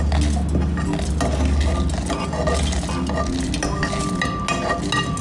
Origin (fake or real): real